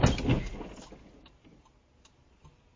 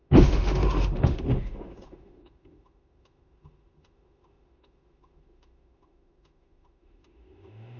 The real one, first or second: first